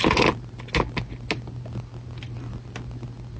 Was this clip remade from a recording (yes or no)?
no